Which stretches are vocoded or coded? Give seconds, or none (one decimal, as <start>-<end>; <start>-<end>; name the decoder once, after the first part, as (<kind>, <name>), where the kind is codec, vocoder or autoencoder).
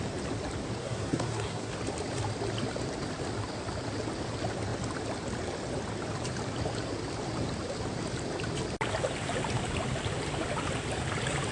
0.8-1.7 (codec, SNAC)